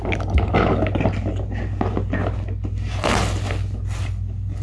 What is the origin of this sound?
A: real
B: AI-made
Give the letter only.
A